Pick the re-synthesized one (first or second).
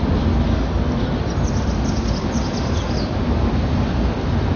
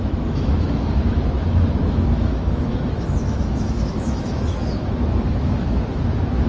second